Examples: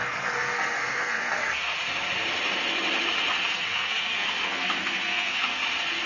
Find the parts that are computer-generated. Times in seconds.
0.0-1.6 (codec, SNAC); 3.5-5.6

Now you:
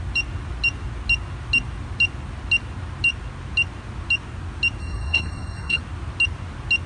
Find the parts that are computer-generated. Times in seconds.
4.8-5.8 (codec, SNAC)

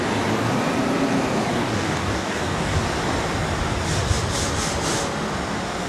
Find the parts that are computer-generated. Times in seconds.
1.5-2.8 (codec, DAC)

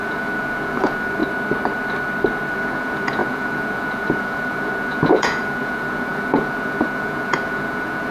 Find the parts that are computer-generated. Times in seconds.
0.0-1.2 (vocoder, Vocos); 2.5-8.1

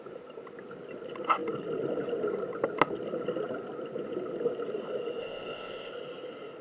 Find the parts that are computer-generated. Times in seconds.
5.2-5.9 (codec, ZipCodec)

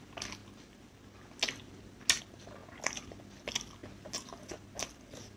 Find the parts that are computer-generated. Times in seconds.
none